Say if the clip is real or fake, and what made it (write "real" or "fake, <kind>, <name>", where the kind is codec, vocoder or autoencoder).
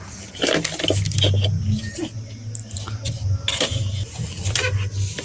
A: real